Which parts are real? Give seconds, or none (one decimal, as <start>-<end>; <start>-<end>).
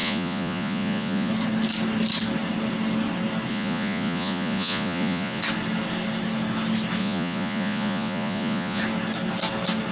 1.3-3.5; 5.4-7.0; 8.8-9.9